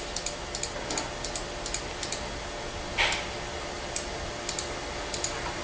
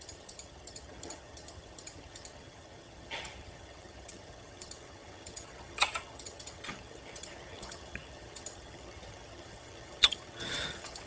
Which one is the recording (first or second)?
first